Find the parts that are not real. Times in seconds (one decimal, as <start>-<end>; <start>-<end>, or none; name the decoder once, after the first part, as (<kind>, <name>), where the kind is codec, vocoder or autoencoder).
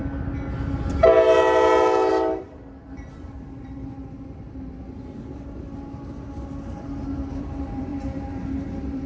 2.1-4.0 (vocoder, BigVGAN v2); 7.0-9.1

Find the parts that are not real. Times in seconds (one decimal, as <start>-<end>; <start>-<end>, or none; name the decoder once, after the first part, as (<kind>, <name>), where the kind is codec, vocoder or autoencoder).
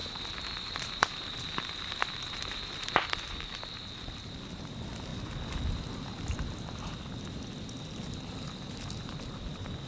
0.0-4.3 (vocoder, BigVGAN v2)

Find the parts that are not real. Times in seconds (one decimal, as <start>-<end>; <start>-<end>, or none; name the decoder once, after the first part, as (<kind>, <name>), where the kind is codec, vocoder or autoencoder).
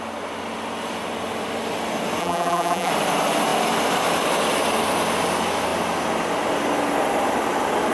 2.2-2.9 (vocoder, BigVGAN v2)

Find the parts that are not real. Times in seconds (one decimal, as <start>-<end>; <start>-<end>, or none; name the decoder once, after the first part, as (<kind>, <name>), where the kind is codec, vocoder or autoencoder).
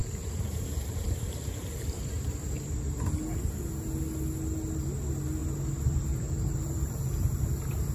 0.0-2.0 (vocoder, BigVGAN v2); 5.4-7.4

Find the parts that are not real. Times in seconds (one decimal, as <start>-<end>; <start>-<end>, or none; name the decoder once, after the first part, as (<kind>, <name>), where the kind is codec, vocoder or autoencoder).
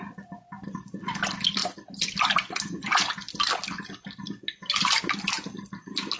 none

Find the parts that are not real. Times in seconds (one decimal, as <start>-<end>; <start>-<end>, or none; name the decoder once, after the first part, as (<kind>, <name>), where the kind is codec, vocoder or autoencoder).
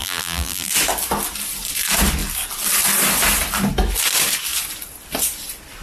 0.0-0.7 (vocoder, BigVGAN v2)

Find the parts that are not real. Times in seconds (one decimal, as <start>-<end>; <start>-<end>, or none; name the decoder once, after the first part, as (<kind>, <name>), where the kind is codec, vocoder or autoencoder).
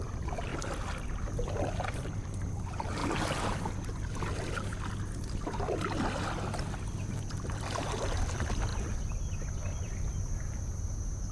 0.0-0.5 (vocoder, BigVGAN v2); 1.9-3.0; 7.8-8.7; 9.7-11.3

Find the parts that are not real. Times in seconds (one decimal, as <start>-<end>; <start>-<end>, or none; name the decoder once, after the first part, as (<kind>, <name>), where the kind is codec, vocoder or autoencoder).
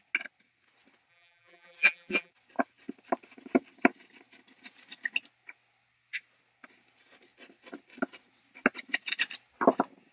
1.1-2.3 (vocoder, BigVGAN v2)